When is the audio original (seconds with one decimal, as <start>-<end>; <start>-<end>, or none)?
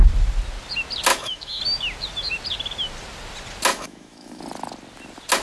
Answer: 0.0-1.1; 1.6-3.7; 4.4-5.4